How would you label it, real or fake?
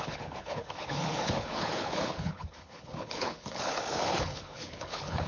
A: fake